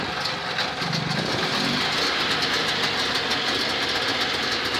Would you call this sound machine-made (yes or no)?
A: no